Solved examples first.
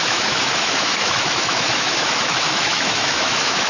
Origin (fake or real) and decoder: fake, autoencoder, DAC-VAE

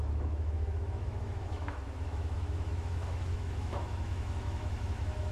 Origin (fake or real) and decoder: fake, autoencoder, DAC-VAE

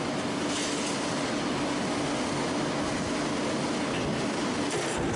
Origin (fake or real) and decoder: real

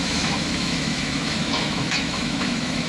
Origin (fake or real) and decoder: fake, autoencoder, DAC-VAE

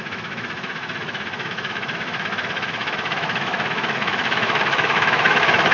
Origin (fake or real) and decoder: fake, autoencoder, DAC-VAE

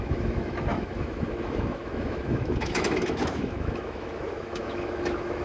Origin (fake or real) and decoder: fake, autoencoder, DAC-VAE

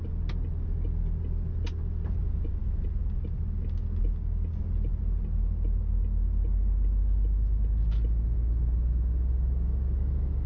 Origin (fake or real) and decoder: real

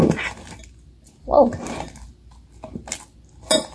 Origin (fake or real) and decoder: real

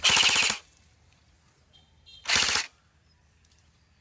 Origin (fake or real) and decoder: real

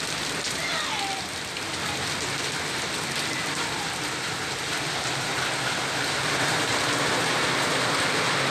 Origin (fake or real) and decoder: real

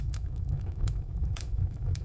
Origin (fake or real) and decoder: fake, autoencoder, DAC-VAE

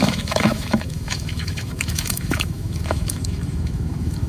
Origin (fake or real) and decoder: fake, autoencoder, DAC-VAE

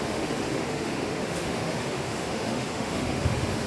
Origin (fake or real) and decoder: fake, autoencoder, DAC-VAE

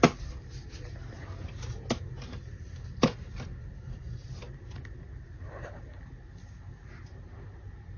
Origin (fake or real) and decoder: real